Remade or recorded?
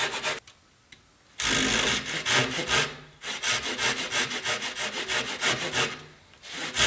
recorded